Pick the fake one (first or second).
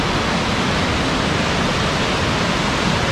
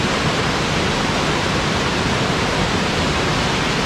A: second